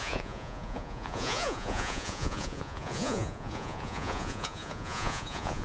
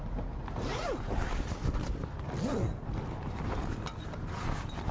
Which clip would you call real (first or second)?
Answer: second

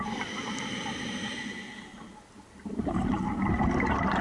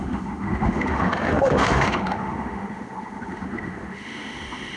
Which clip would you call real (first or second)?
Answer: first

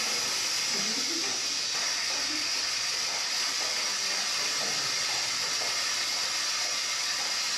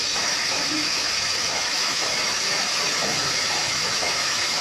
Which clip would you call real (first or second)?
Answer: first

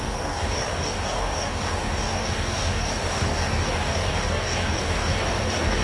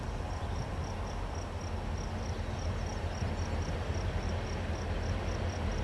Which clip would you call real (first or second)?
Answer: second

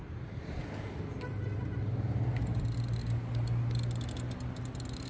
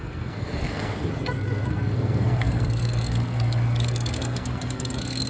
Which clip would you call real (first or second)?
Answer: first